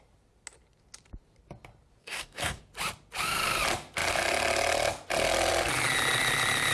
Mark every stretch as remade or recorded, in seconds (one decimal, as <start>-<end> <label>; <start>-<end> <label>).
0.0-2.0 recorded; 2.0-2.6 remade; 2.6-6.7 recorded